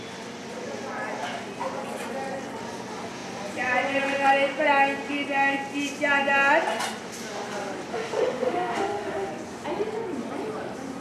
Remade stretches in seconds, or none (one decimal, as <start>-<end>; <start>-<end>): 7.9-9.3